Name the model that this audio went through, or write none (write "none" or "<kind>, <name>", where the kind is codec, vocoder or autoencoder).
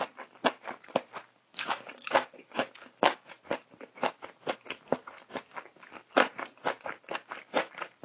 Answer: none